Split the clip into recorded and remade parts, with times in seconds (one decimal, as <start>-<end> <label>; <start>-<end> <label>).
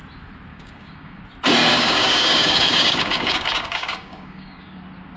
0.0-0.5 recorded; 0.5-1.2 remade; 1.2-1.7 recorded; 1.7-4.8 remade; 4.8-5.2 recorded